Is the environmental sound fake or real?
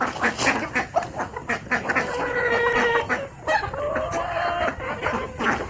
real